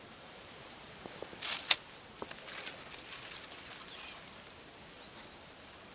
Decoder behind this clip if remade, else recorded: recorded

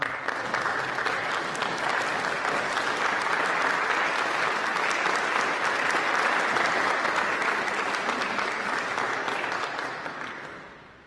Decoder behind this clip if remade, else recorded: recorded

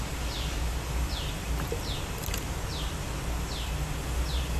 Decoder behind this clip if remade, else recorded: recorded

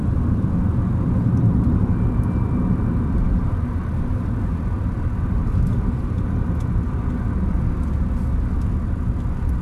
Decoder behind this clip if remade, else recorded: recorded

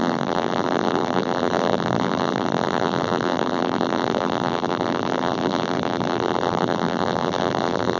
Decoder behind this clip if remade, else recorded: remade, vocoder, BigVGAN v2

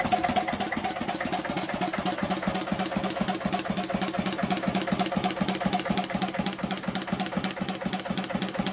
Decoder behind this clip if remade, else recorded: recorded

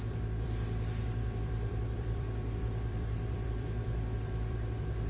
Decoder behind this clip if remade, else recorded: remade, vocoder, BigVGAN v2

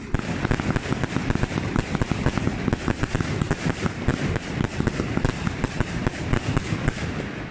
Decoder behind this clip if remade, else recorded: recorded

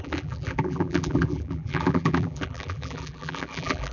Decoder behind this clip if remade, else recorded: remade, vocoder, BigVGAN v2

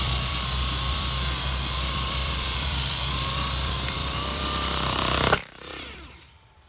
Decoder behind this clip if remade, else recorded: remade, vocoder, BigVGAN v2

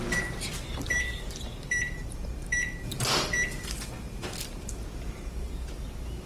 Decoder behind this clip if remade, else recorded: remade, vocoder, BigVGAN v2